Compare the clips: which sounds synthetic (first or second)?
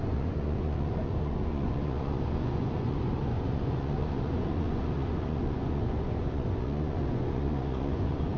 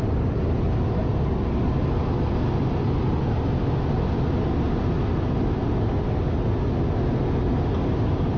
first